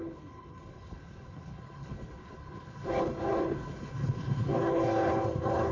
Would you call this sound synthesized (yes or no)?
yes